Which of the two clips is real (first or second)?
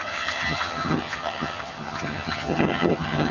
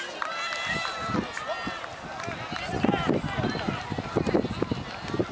second